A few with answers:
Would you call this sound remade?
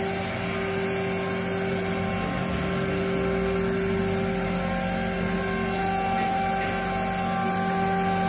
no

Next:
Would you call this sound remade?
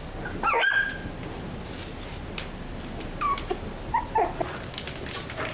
no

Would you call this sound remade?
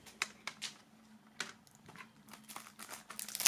no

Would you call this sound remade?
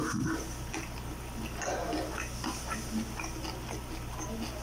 no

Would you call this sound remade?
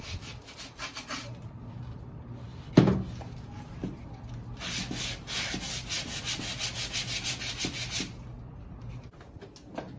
no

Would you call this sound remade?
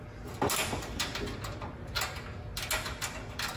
no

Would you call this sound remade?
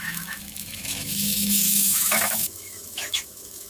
yes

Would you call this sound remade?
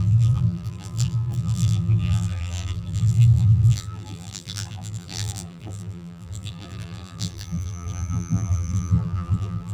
yes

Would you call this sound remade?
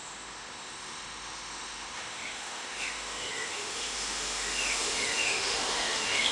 yes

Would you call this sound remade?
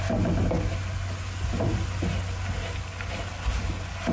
no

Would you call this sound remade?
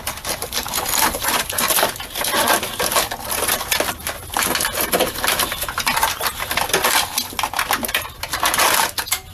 no